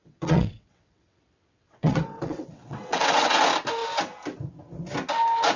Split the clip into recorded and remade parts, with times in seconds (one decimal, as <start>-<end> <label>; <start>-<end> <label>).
0.0-3.4 remade; 3.4-5.6 recorded